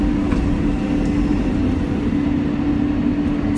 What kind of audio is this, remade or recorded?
recorded